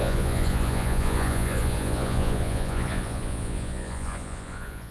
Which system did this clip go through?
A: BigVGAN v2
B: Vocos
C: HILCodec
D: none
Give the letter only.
B